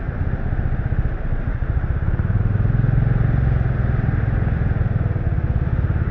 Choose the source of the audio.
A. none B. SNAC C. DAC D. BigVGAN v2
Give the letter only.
A